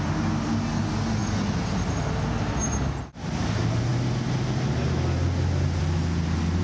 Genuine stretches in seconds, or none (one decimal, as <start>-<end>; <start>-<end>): 0.0-6.6